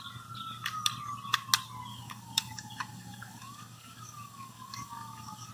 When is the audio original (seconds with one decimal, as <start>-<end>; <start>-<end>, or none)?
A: 0.0-1.9